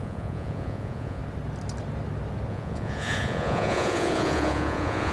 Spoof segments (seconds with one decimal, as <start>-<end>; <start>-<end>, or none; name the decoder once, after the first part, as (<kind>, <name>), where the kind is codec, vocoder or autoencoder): 0.0-1.2 (vocoder, Vocos); 2.5-5.1